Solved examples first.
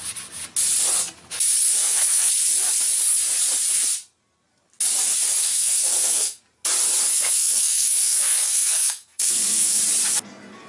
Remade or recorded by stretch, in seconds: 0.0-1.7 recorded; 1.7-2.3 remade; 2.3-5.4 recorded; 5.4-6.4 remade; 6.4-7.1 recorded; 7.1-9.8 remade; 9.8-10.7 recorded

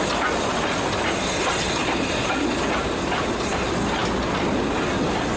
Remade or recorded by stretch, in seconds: 0.0-5.4 recorded

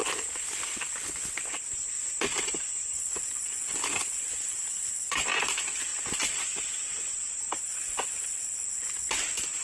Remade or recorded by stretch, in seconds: 0.0-5.9 remade; 5.9-9.6 recorded